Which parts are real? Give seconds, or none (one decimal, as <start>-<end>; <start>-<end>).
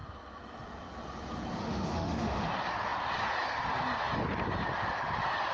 0.0-1.6; 2.5-5.5